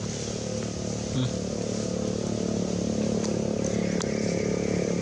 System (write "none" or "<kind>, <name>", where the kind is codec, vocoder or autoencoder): none